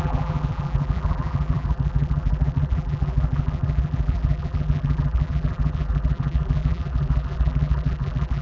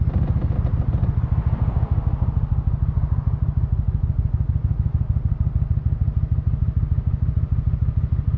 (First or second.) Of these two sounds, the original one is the second